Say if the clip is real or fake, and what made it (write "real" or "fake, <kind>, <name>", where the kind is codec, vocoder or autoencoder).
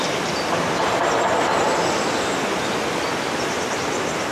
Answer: fake, vocoder, BigVGAN v2